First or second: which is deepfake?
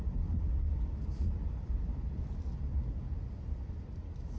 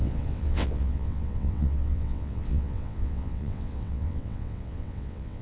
second